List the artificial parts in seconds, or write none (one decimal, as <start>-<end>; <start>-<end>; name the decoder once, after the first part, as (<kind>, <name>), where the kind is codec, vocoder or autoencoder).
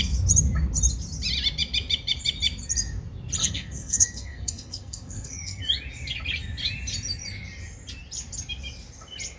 3.4-5.6 (codec, SNAC)